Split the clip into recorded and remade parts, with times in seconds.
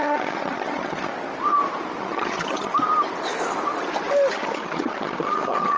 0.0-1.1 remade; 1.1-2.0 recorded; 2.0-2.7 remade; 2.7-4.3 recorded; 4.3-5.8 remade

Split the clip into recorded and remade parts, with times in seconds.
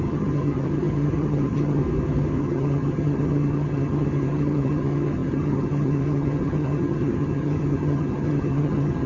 0.0-1.8 remade; 1.8-2.4 recorded; 2.4-9.1 remade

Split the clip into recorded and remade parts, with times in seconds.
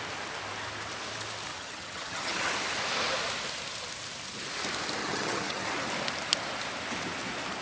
0.0-1.5 recorded; 1.5-2.5 remade; 2.5-5.0 recorded; 5.0-5.7 remade; 5.7-7.6 recorded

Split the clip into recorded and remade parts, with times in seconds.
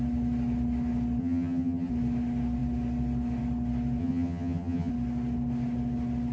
0.0-1.2 recorded; 1.2-1.9 remade; 1.9-4.0 recorded; 4.0-4.9 remade; 4.9-6.3 recorded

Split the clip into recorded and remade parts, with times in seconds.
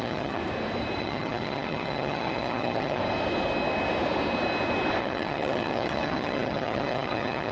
0.0-0.4 remade; 0.4-1.0 recorded; 1.0-3.0 remade; 3.0-5.0 recorded; 5.0-7.5 remade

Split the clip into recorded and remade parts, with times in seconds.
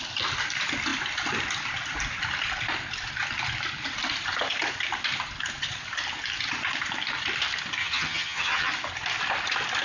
0.0-7.8 recorded; 7.8-8.7 remade; 8.7-9.8 recorded